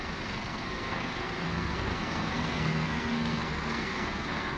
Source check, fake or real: fake